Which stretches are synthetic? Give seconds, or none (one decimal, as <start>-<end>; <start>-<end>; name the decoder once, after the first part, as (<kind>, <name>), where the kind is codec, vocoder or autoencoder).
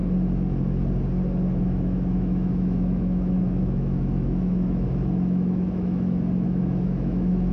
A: 1.6-7.5 (autoencoder, DAC-VAE)